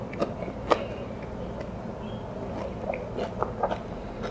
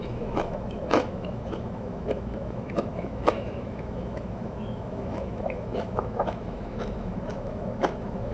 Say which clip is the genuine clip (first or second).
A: first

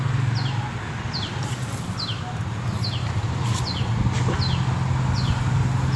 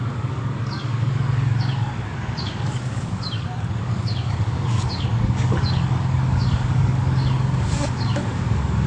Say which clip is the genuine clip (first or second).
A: first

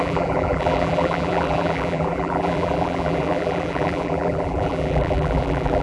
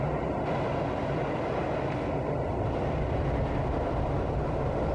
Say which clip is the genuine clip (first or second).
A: second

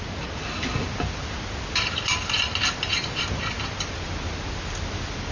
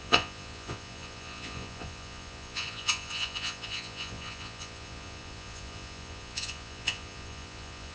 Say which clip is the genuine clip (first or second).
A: first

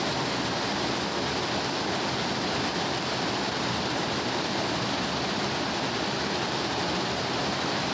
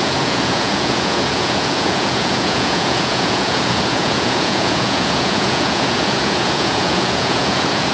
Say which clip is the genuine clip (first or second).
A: first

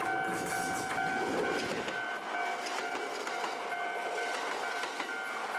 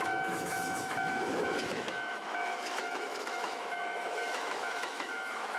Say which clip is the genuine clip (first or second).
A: first